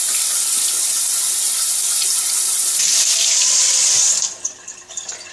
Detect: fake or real fake